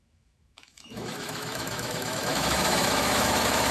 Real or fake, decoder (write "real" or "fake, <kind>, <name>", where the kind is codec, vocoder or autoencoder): fake, autoencoder, DAC-VAE